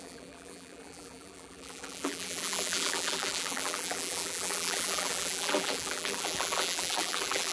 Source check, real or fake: fake